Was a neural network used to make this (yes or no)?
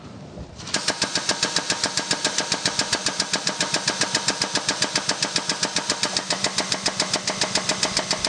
no